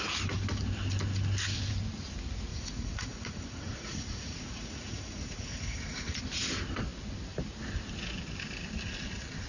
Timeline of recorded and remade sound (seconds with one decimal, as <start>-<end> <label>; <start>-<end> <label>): 0.0-2.5 recorded; 2.5-6.2 remade; 6.2-9.5 recorded

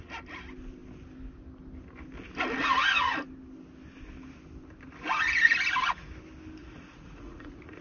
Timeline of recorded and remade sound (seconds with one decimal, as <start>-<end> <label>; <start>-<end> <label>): 0.0-6.6 recorded; 6.6-7.8 remade

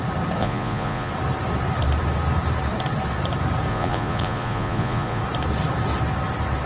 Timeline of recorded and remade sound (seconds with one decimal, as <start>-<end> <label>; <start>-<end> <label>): 0.0-0.4 recorded; 0.4-1.1 remade; 1.1-3.7 recorded; 3.7-5.2 remade; 5.2-6.7 recorded

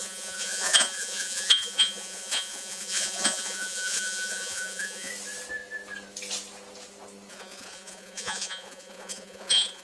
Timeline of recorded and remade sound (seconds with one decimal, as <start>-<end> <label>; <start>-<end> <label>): 0.0-5.1 remade; 5.1-7.3 recorded; 7.3-9.8 remade

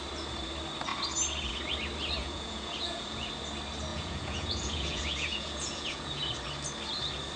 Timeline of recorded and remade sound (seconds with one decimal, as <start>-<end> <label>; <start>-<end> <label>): 0.0-2.2 recorded; 2.2-3.3 remade; 3.3-3.9 recorded; 3.9-6.2 remade; 6.2-7.4 recorded

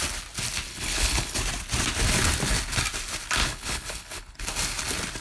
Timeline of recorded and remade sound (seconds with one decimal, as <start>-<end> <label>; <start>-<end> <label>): 0.0-0.7 recorded; 0.7-1.4 remade; 1.4-3.4 recorded; 3.4-4.4 remade; 4.4-5.2 recorded

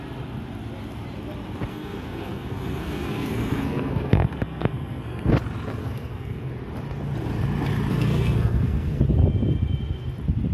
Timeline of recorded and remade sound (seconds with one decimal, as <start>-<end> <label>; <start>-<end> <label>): 0.0-1.7 recorded; 1.7-5.3 remade; 5.3-5.8 recorded; 5.8-6.5 remade; 6.5-7.9 recorded; 7.9-9.0 remade; 9.0-10.5 recorded

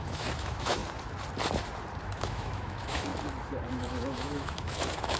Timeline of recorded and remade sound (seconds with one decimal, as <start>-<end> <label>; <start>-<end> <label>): 0.0-0.8 remade; 0.8-2.0 recorded; 2.0-3.1 remade; 3.1-3.7 recorded; 3.7-5.2 remade